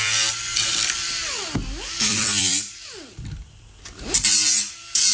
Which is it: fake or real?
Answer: fake